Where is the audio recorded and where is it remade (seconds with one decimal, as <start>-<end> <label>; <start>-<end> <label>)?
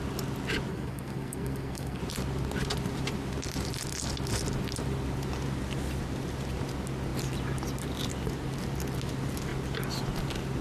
0.0-0.7 recorded; 0.7-2.0 remade; 2.0-10.6 recorded